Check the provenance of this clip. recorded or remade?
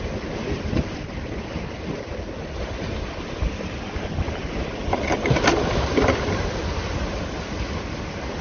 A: recorded